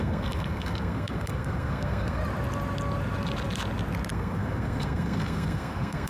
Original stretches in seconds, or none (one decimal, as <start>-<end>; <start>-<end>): 2.2-4.1